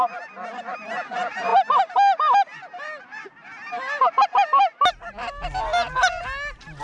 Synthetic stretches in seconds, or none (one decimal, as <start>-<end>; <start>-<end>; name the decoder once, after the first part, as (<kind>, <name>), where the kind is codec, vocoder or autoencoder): none